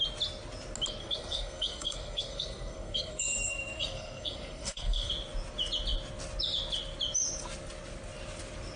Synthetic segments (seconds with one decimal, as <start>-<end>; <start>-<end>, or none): 1.0-5.1